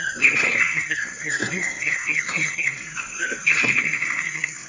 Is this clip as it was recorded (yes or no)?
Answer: no